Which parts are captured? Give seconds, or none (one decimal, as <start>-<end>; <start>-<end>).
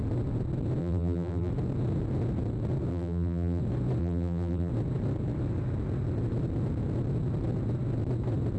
0.0-0.8; 1.5-2.9; 3.6-4.0; 4.7-8.6